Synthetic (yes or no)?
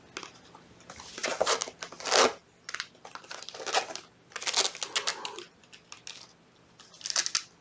no